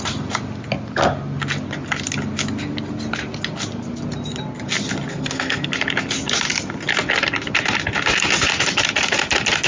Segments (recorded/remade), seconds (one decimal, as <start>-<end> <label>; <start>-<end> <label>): 0.0-5.1 recorded; 5.1-5.7 remade; 5.7-9.7 recorded